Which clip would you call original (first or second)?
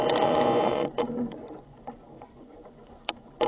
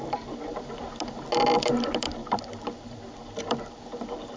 second